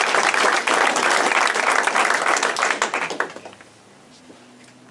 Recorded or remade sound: recorded